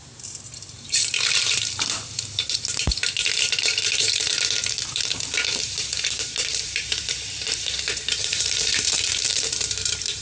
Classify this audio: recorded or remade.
remade